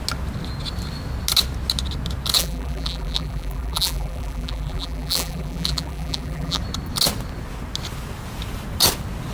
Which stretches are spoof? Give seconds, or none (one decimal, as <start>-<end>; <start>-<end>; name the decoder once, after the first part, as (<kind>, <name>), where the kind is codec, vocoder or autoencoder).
2.4-6.6 (vocoder, BigVGAN v2)